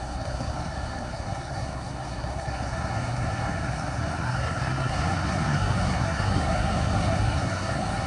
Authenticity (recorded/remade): remade